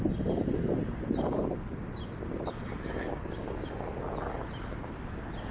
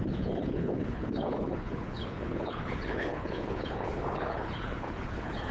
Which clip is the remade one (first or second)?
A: second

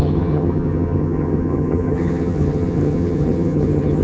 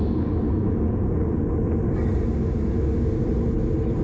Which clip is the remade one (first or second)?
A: first